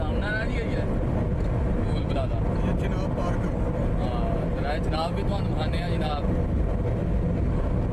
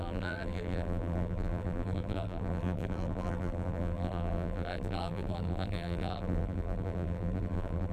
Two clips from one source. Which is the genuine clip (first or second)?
first